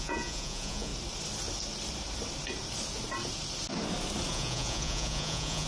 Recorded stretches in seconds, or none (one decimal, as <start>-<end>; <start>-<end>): 0.9-4.3